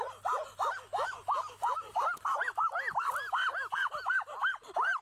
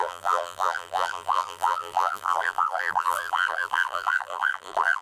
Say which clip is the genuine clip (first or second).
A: first